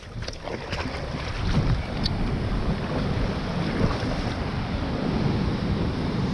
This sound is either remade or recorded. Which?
recorded